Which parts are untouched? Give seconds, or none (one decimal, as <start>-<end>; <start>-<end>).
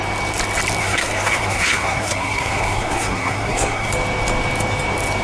0.0-0.8; 3.9-5.2